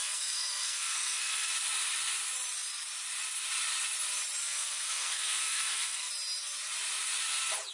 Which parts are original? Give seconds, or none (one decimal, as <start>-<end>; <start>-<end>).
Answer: 1.5-4.4; 6.1-7.7